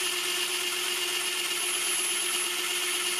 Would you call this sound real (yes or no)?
yes